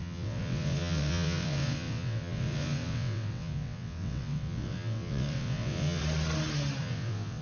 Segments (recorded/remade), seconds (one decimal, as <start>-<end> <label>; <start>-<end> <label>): 0.0-6.0 remade; 6.0-6.8 recorded; 6.8-7.4 remade